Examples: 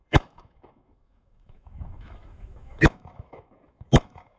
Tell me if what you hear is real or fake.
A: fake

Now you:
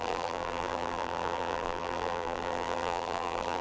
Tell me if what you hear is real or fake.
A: fake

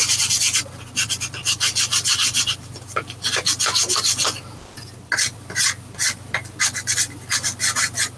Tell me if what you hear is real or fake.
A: real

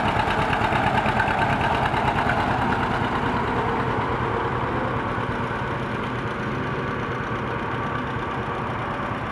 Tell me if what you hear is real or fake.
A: real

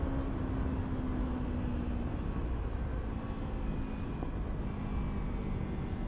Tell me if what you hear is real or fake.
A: real